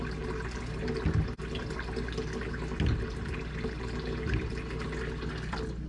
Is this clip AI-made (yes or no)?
no